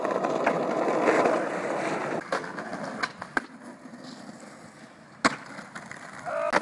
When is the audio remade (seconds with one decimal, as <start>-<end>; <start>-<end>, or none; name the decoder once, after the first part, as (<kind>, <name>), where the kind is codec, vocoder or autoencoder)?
0.0-2.7 (vocoder, BigVGAN v2)